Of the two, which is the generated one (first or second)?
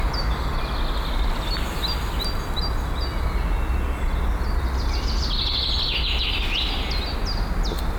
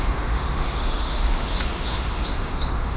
second